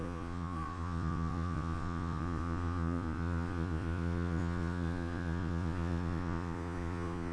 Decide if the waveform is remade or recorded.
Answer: remade